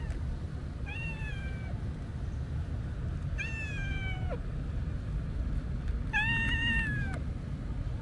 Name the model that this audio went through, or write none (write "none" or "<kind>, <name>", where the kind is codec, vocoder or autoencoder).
none